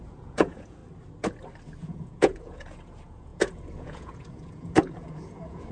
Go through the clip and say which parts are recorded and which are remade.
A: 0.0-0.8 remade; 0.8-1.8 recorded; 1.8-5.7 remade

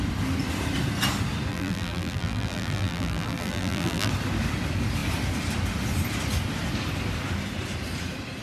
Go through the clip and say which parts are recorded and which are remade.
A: 0.0-1.5 recorded; 1.5-4.1 remade; 4.1-8.4 recorded

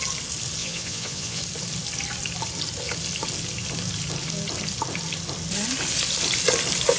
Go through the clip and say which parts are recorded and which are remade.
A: 0.0-0.6 recorded; 0.6-1.4 remade; 1.4-7.0 recorded